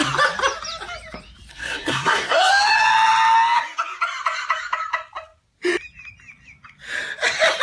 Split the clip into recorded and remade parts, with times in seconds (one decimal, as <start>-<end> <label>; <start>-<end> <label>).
0.0-1.5 recorded; 1.5-2.5 remade; 2.5-7.6 recorded